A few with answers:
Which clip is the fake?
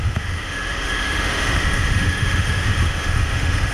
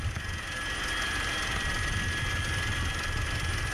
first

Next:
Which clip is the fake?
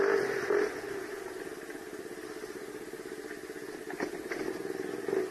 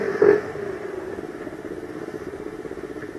second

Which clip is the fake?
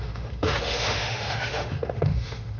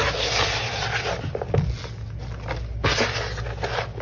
first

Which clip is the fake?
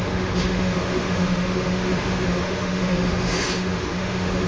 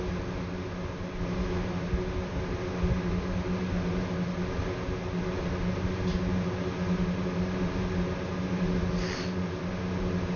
first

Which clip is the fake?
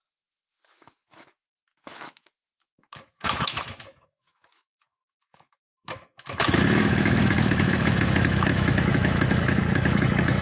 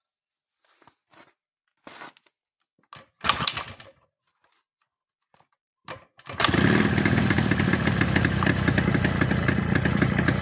first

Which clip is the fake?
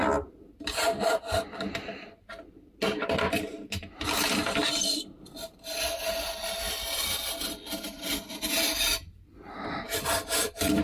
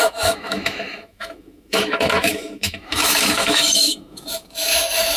second